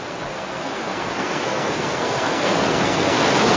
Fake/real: fake